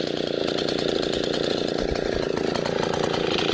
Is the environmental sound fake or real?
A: real